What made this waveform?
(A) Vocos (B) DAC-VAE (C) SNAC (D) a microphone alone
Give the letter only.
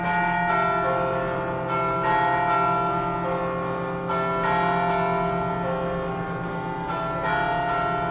D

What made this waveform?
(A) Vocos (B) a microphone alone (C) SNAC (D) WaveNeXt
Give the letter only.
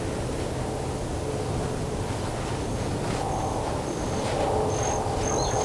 B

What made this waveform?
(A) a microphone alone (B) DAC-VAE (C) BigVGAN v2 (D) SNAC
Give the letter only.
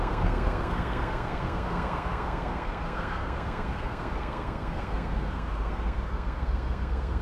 D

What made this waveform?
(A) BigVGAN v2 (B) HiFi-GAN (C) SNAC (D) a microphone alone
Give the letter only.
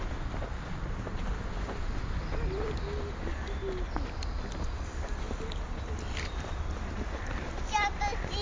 D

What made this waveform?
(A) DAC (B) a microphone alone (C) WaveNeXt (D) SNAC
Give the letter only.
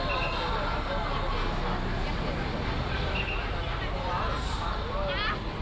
B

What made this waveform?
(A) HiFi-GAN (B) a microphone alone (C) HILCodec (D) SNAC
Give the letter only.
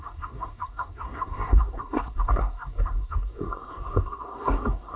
D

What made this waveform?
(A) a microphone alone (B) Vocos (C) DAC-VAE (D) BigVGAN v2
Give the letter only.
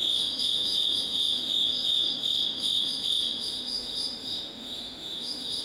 C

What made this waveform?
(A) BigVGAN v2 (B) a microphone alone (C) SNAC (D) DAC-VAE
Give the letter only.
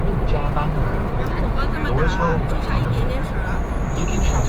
B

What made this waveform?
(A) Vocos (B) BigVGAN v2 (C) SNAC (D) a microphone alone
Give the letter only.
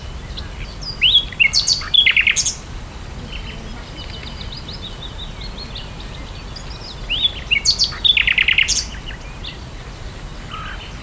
D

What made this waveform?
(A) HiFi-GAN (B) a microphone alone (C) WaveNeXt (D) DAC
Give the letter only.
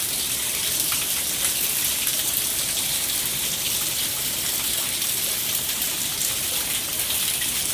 B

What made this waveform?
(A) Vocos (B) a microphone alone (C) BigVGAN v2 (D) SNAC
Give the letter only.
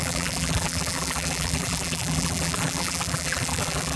C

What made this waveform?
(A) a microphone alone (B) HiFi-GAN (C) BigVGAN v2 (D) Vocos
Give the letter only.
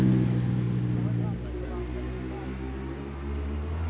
A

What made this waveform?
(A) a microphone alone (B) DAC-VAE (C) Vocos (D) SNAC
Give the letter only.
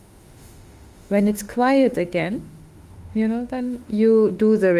B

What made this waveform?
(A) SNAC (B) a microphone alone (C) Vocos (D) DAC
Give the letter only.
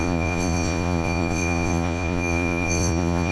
C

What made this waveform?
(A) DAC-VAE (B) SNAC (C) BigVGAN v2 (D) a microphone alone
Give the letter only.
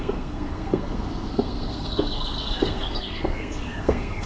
B